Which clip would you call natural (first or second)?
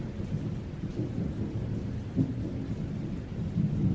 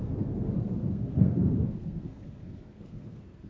first